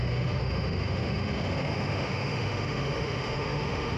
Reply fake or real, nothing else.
fake